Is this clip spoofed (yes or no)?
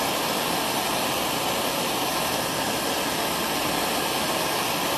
no